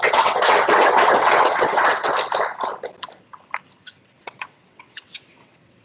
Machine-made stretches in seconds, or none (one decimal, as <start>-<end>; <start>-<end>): 0.0-2.1; 4.2-5.8